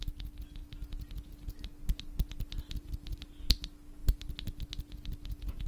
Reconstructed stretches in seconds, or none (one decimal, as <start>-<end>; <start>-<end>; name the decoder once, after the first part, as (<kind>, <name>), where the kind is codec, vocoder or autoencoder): none